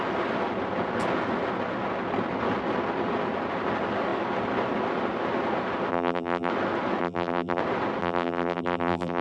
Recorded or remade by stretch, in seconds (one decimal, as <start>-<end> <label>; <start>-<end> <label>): 0.0-5.9 recorded; 5.9-6.5 remade; 6.5-7.0 recorded; 7.0-7.6 remade; 7.6-8.0 recorded; 8.0-9.2 remade